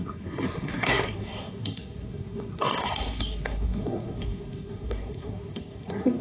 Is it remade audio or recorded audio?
remade